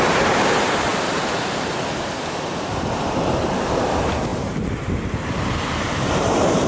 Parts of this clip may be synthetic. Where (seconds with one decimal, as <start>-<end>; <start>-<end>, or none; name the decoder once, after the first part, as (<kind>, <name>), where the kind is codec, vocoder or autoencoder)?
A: 0.0-0.9 (vocoder, BigVGAN v2); 3.6-6.7